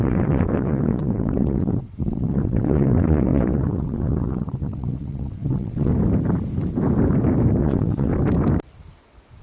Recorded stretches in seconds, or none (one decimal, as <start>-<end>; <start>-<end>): 5.9-7.6; 8.1-9.4